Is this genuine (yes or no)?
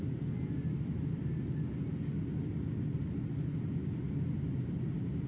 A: yes